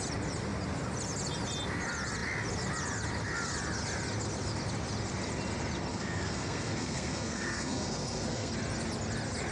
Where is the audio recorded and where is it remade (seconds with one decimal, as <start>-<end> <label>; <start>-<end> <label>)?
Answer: 0.0-5.9 recorded; 5.9-8.5 remade; 8.5-9.5 recorded